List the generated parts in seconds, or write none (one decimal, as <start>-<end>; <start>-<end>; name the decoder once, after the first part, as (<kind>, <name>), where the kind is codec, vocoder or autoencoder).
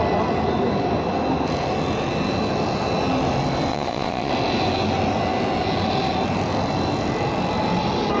3.7-4.3 (vocoder, Vocos)